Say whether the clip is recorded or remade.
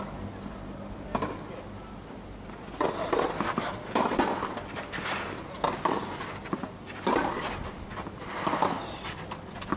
recorded